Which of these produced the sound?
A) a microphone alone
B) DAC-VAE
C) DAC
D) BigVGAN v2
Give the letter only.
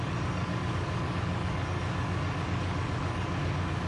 C